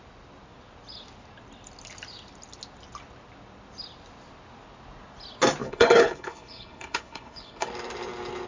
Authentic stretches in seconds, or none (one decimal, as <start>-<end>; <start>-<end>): 0.0-5.6; 7.7-8.5